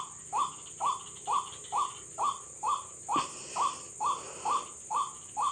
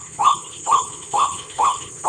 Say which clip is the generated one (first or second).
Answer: second